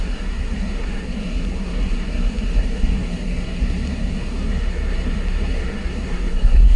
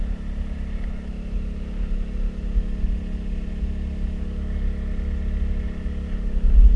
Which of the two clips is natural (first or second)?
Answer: second